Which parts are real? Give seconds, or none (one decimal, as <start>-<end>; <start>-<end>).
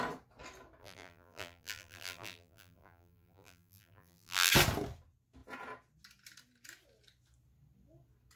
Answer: 0.0-0.8; 4.5-8.4